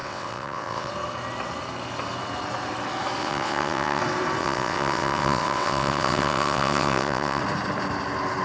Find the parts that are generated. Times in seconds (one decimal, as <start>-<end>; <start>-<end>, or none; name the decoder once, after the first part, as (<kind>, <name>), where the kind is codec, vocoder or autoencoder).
0.0-0.9 (vocoder, WaveNeXt); 3.2-4.0; 4.4-7.4